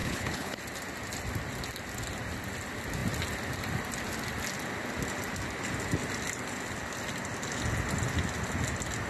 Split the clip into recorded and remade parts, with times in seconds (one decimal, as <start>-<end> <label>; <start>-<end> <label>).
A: 0.0-0.6 remade; 0.6-9.1 recorded